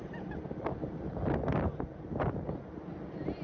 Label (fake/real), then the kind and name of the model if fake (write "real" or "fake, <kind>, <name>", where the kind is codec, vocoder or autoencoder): real